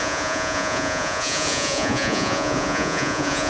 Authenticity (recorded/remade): remade